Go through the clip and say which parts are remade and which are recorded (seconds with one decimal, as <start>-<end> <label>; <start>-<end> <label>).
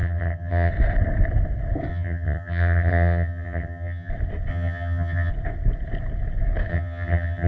0.0-0.7 remade; 0.7-1.9 recorded; 1.9-4.1 remade; 4.1-4.5 recorded; 4.5-5.3 remade; 5.3-6.7 recorded; 6.7-7.5 remade